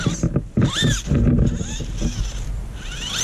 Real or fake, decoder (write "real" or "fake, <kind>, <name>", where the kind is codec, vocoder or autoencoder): real